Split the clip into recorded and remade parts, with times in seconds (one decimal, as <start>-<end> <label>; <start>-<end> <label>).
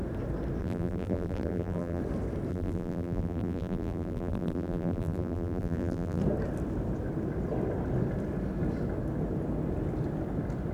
0.0-0.6 recorded; 0.6-2.0 remade; 2.0-2.5 recorded; 2.5-6.2 remade; 6.2-10.7 recorded